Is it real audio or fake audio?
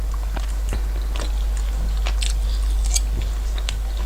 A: real